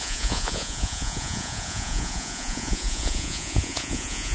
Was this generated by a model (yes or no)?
yes